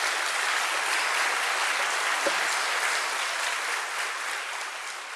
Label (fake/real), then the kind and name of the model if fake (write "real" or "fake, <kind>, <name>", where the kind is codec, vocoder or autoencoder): real